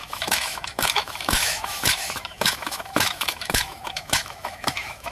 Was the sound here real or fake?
fake